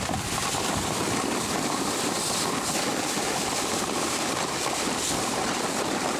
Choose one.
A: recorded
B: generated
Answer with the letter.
A